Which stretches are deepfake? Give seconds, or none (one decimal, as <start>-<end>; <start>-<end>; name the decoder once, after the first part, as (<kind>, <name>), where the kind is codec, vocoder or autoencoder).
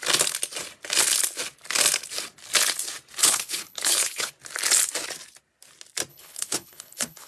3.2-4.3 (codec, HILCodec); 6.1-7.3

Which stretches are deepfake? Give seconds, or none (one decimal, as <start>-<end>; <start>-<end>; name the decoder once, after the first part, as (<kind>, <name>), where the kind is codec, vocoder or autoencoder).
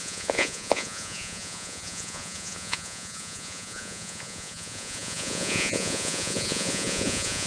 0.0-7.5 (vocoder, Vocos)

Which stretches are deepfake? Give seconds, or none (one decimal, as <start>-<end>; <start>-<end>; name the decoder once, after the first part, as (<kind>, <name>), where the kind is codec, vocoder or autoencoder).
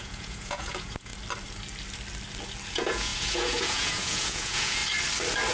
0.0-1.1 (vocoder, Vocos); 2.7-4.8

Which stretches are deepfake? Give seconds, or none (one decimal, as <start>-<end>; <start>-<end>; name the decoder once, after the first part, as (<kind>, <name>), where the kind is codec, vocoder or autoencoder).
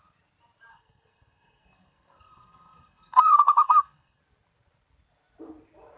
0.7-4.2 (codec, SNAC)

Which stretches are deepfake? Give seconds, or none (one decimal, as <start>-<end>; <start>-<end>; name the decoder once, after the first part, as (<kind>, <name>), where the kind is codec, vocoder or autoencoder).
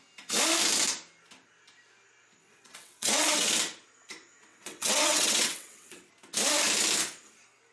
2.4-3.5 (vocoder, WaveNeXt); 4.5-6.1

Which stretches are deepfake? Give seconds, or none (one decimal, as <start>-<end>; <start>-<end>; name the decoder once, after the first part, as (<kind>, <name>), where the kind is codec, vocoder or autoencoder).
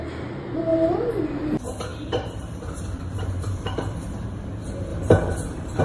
0.7-1.2 (vocoder, BigVGAN v2); 1.9-4.4; 4.9-5.8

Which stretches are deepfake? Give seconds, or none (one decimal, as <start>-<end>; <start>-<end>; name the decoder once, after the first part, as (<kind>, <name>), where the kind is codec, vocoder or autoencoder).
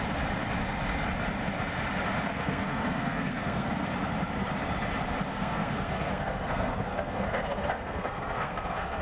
2.3-3.7 (codec, SNAC); 5.3-9.0